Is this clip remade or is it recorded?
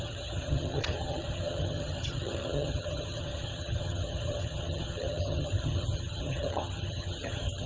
remade